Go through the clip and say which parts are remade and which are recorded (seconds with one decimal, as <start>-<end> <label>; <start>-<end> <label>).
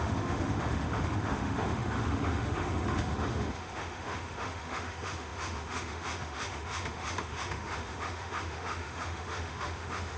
0.0-10.2 remade